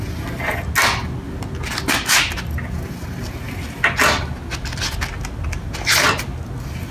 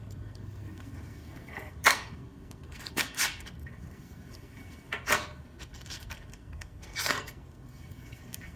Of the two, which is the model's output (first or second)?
second